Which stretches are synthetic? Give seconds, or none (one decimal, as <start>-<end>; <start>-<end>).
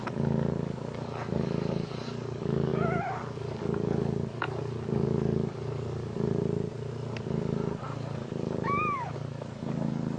0.0-6.4; 7.2-10.2